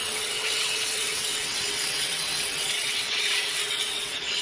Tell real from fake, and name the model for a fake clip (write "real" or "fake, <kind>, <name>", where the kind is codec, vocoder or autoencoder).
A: fake, vocoder, WaveNeXt